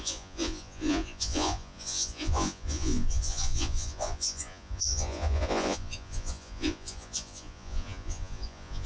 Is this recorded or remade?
remade